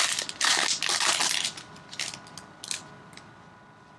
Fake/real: real